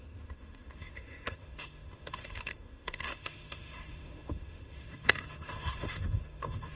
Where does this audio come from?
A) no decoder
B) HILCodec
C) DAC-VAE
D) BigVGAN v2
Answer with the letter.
C